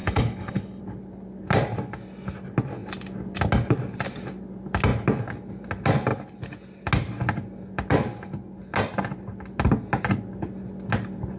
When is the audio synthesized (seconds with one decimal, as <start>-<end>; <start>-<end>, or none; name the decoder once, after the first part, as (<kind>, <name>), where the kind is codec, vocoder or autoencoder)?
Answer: 0.0-0.8 (codec, HILCodec)